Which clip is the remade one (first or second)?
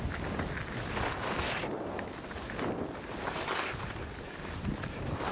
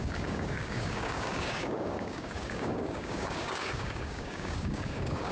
second